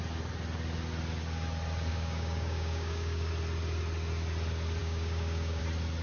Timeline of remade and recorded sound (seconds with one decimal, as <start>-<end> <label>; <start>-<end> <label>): 0.0-1.9 recorded; 1.9-3.3 remade; 3.3-4.8 recorded; 4.8-5.6 remade; 5.6-6.0 recorded